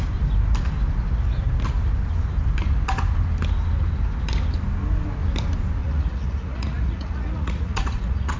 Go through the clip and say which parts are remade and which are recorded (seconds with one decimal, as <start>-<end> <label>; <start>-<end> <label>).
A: 0.0-5.8 recorded; 5.8-8.4 remade